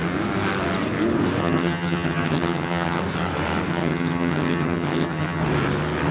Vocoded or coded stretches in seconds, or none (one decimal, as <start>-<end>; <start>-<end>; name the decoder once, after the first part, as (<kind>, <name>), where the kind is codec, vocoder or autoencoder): 1.4-3.0 (vocoder, HiFi-GAN); 3.7-5.4